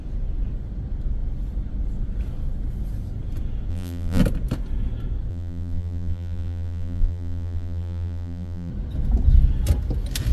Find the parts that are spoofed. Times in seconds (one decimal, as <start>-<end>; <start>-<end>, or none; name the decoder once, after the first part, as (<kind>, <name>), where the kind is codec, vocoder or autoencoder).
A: 3.7-4.2 (vocoder, BigVGAN v2); 5.3-8.7